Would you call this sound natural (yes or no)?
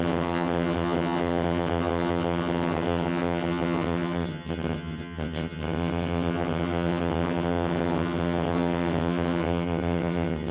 no